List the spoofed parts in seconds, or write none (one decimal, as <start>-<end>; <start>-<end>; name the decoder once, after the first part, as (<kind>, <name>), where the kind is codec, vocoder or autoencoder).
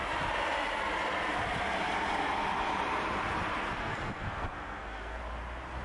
3.8-5.2 (codec, SNAC)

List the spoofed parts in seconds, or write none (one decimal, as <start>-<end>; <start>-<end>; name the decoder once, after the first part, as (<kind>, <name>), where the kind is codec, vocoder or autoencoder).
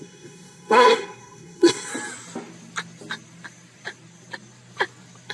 0.0-1.9 (codec, SNAC)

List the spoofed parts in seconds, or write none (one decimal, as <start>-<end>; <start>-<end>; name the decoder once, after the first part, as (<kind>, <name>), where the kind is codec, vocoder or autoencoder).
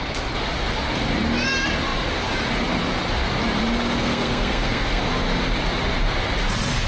4.0-5.0 (codec, SNAC)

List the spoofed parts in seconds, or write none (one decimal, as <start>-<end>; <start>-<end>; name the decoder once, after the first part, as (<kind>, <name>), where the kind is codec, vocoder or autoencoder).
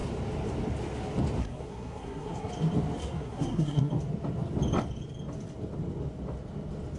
1.4-2.5 (codec, SNAC); 3.0-3.9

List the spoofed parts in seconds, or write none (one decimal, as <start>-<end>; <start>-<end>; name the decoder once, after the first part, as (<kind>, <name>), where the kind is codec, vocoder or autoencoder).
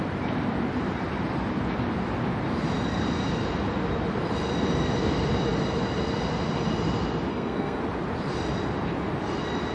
7.3-7.8 (codec, SNAC)